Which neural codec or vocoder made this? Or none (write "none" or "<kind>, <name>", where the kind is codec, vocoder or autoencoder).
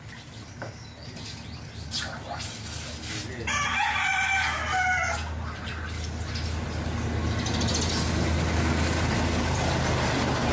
none